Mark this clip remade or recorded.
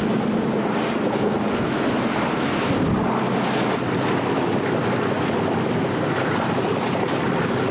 recorded